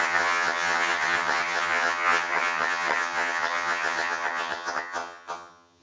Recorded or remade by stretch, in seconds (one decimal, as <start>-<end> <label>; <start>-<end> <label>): 0.0-5.8 remade